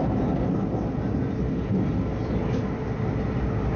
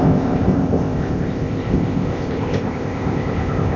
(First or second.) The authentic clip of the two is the first